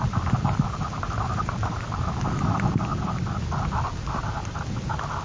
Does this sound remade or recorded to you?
recorded